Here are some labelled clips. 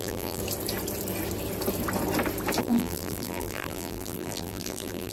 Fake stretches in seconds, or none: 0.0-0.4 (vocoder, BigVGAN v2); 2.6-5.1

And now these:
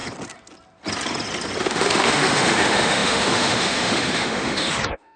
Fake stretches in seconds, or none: 1.6-5.2 (autoencoder, DAC-VAE)

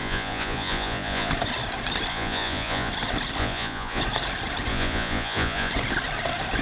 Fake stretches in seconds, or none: 0.0-1.3 (vocoder, Vocos); 2.1-2.9; 3.4-4.0; 4.7-5.7

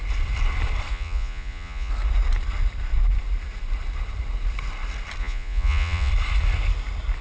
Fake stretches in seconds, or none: 0.9-1.9 (vocoder, Vocos); 5.2-6.1

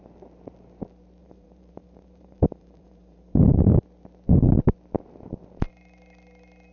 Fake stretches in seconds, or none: 1.2-3.7 (vocoder, BigVGAN v2)

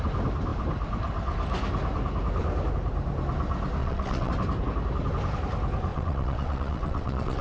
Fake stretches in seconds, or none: 3.8-4.3 (vocoder, WaveNeXt); 5.9-7.4